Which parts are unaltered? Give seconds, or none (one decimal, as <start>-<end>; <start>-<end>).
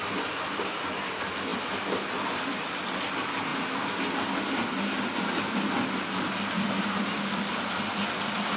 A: 0.0-8.6